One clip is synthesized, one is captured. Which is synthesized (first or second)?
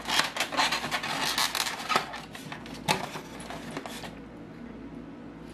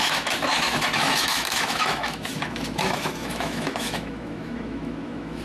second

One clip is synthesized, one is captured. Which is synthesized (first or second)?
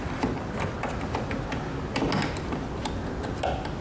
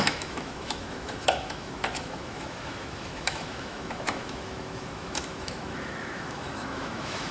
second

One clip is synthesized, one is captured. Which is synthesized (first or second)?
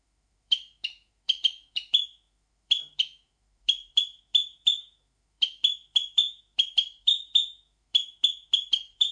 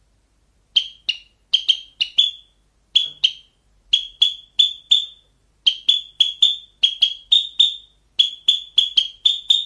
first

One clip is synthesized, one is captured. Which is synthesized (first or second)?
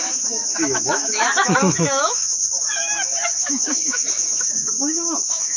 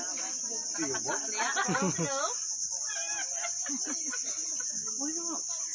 first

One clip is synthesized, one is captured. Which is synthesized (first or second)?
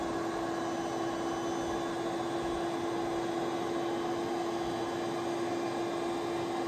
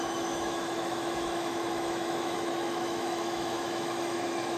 second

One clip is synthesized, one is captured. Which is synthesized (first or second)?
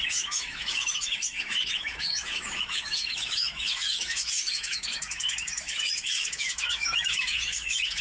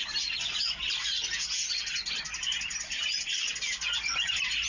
first